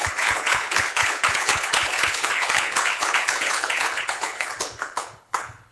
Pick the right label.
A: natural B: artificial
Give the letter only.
B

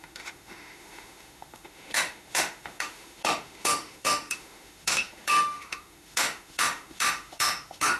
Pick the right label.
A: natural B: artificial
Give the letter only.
B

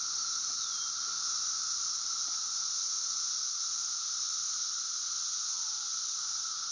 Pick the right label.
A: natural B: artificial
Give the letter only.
A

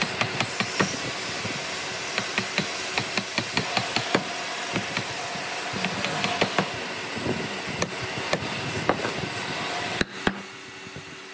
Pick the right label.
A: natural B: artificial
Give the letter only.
A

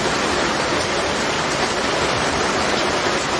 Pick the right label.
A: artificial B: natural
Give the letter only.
A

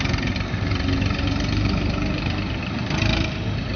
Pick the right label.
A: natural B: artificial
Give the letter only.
B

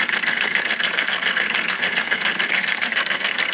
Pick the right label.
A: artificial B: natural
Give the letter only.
A